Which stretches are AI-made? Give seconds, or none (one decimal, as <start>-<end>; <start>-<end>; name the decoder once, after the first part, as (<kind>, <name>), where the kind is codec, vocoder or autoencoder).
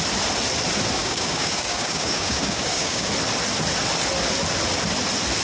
1.0-3.1 (codec, DAC)